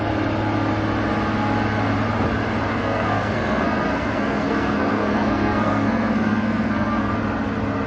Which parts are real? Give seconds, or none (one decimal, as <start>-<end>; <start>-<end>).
0.0-2.7; 7.1-7.9